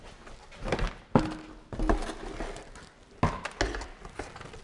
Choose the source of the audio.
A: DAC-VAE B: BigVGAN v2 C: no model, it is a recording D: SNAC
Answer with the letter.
C